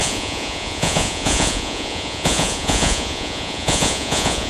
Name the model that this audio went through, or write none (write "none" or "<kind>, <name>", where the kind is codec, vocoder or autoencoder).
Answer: vocoder, Vocos